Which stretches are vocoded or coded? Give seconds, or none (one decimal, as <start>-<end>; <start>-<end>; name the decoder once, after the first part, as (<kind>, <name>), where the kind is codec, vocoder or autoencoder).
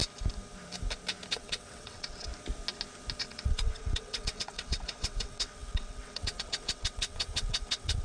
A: 1.3-2.3 (vocoder, WaveNeXt); 3.2-8.0